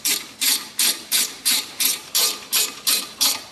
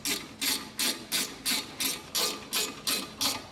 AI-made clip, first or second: first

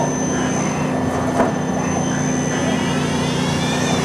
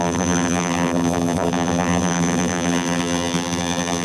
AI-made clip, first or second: second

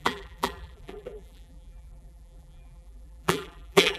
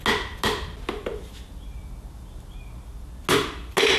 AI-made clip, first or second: first